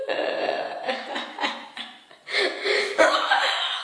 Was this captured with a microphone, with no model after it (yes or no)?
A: no